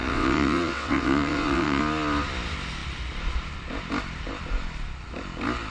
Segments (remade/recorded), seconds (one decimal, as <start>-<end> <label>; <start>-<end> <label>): 0.0-1.8 remade; 1.8-5.7 recorded